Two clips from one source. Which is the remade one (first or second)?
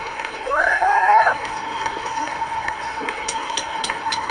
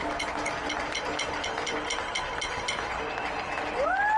first